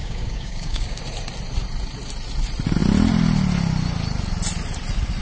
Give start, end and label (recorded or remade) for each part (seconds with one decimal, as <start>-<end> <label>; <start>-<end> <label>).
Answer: 0.0-1.0 remade; 1.0-5.2 recorded